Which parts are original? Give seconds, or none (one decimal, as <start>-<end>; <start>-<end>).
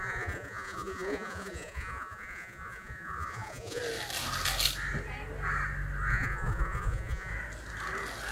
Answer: 3.8-6.1; 7.3-8.3